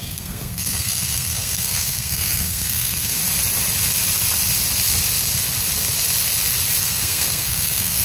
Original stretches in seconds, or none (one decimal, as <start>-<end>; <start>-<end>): 3.2-6.8